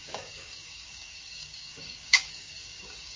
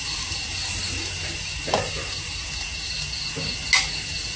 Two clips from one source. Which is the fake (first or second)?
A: first